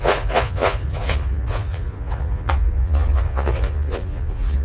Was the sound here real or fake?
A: fake